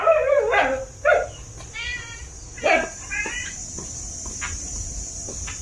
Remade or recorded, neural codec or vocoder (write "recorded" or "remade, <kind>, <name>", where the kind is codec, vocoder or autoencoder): recorded